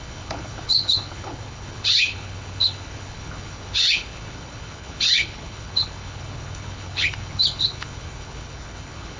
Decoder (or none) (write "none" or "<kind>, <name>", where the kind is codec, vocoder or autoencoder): codec, HILCodec